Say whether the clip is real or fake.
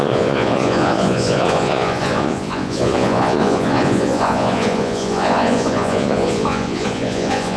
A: fake